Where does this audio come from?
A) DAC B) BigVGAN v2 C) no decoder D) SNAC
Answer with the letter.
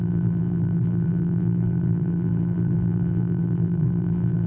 B